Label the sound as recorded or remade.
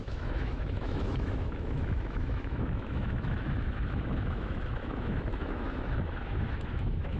remade